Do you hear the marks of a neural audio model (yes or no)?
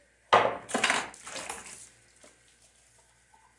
no